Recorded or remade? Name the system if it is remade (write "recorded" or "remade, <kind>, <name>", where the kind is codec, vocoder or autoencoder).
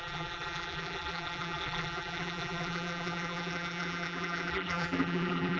remade, vocoder, BigVGAN v2